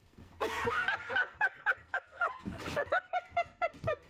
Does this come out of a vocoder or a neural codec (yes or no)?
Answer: yes